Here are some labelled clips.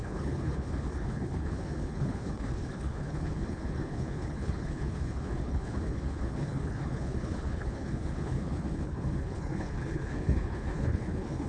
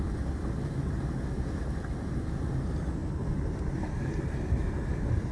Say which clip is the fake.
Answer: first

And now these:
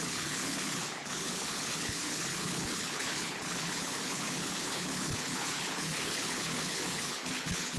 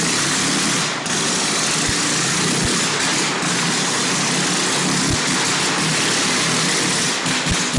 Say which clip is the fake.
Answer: first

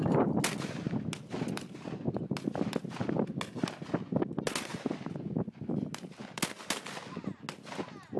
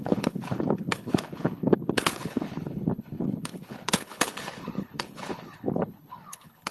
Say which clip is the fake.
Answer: second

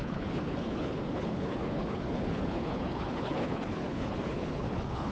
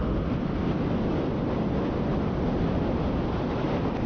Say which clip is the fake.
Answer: first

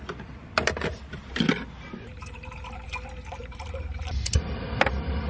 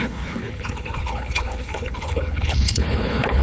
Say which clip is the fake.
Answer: second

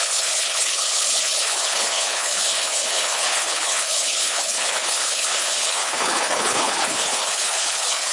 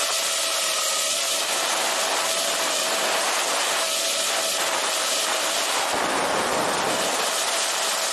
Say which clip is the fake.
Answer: first